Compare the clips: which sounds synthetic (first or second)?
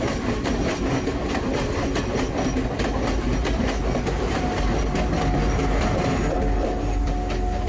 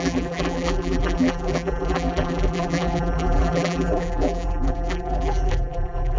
second